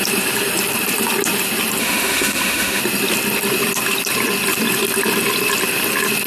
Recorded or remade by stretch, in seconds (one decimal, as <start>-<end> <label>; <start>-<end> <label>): 0.0-1.8 recorded; 1.8-2.8 remade; 2.8-6.3 recorded